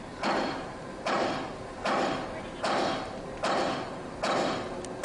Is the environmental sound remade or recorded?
recorded